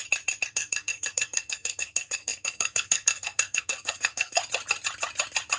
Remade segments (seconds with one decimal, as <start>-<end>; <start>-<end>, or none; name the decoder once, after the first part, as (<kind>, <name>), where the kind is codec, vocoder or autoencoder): 0.5-4.4 (codec, SNAC)